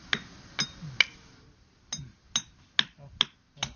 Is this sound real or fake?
real